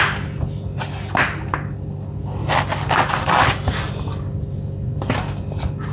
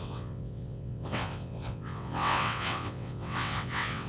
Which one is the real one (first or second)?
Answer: first